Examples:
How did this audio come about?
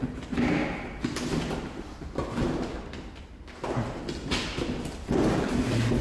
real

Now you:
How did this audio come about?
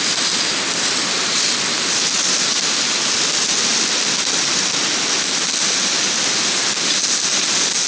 real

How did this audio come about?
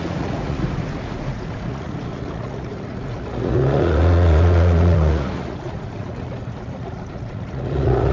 fake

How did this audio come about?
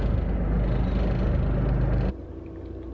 real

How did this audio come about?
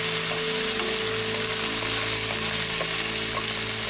real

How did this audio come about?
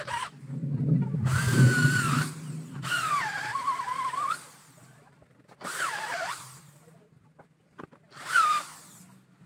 fake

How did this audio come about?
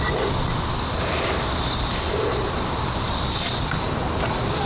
real